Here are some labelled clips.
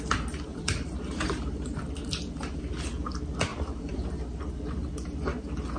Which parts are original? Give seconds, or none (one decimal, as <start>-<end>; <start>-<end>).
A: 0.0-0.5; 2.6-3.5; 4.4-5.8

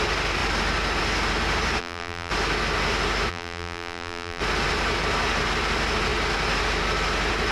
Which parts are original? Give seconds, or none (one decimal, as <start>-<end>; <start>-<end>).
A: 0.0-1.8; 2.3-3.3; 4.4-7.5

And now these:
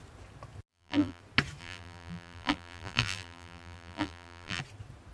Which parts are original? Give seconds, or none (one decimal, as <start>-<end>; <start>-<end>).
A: 0.0-0.7; 1.2-1.6; 4.6-5.1